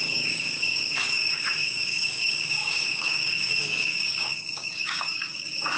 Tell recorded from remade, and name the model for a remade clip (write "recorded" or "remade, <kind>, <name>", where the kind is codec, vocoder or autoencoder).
remade, codec, DAC